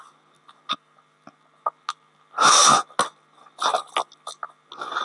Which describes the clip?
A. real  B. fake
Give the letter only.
A